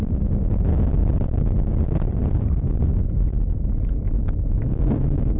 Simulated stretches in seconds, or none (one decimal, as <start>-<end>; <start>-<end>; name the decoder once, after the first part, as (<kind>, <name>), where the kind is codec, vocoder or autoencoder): 0.0-1.0 (vocoder, BigVGAN v2); 1.7-5.4

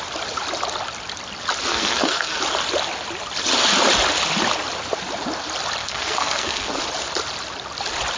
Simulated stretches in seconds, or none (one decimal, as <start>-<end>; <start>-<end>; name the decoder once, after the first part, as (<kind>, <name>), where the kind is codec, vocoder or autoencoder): 1.7-2.4 (codec, SNAC); 5.8-6.8